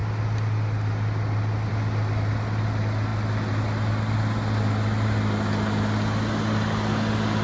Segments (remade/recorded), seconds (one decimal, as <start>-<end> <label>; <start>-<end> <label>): 0.0-7.4 recorded